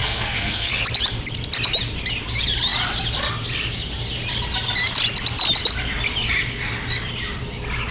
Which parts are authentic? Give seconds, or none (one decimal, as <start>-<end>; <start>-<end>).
0.7-7.9